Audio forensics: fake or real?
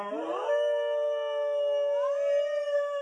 real